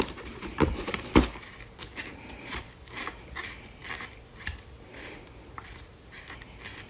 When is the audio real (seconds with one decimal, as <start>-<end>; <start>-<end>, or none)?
0.0-6.9

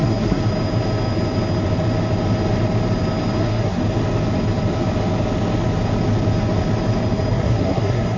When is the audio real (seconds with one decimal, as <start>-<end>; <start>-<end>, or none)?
0.4-3.4; 3.8-7.3

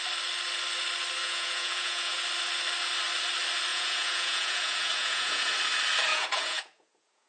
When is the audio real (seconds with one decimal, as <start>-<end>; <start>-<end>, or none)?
0.0-1.2; 2.2-3.7; 5.5-6.1

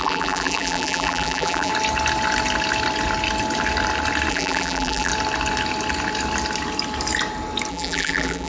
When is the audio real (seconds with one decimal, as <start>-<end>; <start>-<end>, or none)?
1.7-4.3; 5.1-7.7

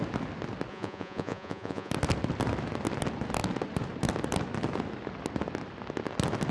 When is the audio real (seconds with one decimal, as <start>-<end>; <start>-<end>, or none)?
0.0-0.7; 1.9-6.5

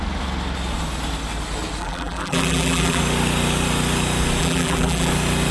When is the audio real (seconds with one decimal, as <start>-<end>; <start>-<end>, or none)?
0.0-1.8; 3.0-4.4; 5.1-5.5

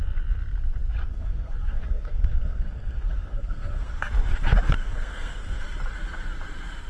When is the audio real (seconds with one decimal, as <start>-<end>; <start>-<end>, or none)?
0.0-1.1; 3.9-4.8; 5.6-6.9